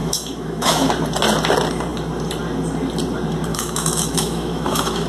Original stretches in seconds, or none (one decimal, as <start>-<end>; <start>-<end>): 0.9-3.5